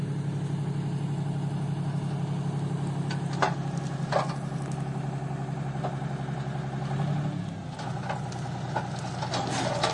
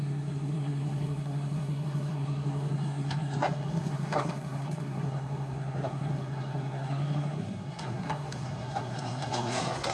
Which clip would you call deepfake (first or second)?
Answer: second